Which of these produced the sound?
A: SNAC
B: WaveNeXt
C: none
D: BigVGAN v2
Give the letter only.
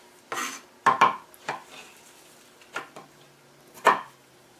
C